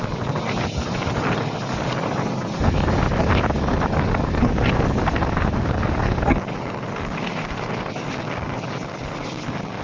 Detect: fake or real real